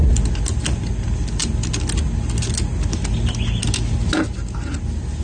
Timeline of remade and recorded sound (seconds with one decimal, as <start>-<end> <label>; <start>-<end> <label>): 0.0-5.2 recorded